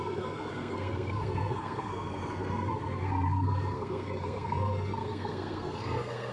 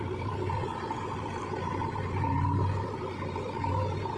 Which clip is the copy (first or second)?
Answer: first